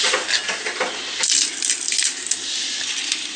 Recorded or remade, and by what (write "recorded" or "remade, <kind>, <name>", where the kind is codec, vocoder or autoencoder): recorded